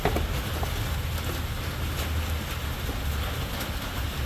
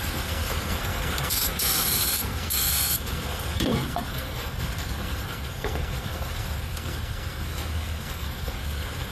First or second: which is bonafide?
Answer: first